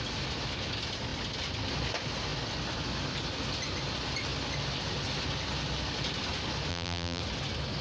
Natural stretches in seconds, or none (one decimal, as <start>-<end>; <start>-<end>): 0.0-6.7; 7.2-7.8